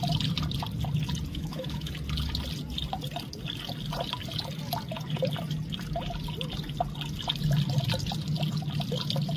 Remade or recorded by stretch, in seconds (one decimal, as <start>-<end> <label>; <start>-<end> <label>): 0.0-1.3 recorded; 1.3-1.9 remade; 1.9-9.4 recorded